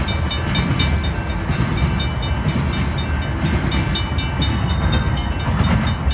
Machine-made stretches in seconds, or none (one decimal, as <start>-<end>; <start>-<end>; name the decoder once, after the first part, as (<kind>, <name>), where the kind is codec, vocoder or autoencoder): 4.5-5.3 (codec, SNAC)